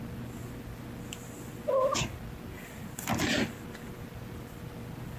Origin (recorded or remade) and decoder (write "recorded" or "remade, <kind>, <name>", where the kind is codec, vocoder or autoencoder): recorded